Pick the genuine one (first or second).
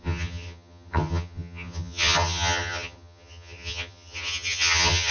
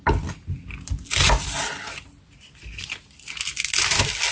second